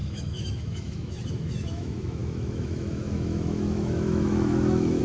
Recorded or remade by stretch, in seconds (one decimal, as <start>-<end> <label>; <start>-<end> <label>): 0.0-5.0 remade